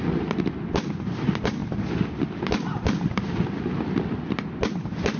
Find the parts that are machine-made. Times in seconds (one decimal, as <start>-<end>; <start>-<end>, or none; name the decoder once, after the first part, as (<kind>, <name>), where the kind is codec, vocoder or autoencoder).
none